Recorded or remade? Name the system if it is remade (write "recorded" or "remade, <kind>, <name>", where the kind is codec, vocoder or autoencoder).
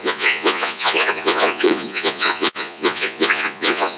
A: remade, vocoder, Vocos